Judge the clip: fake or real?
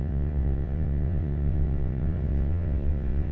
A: fake